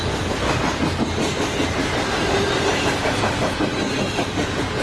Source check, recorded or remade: recorded